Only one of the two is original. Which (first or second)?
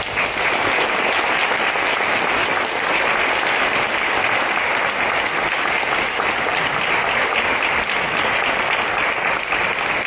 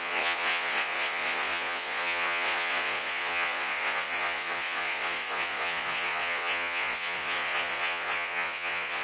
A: first